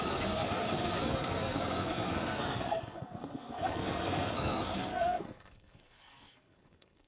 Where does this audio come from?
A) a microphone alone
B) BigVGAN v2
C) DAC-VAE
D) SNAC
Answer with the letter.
D